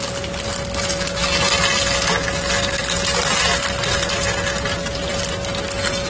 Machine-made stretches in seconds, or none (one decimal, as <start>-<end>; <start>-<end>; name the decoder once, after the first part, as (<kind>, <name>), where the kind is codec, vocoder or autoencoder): none